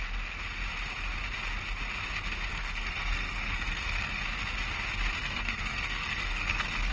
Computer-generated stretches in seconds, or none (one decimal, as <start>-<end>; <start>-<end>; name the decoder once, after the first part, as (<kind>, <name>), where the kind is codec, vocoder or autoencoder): 2.5-4.2 (codec, SNAC); 5.2-6.9